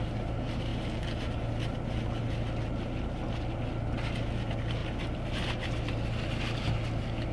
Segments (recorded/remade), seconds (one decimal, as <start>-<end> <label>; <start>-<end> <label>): 0.0-7.3 recorded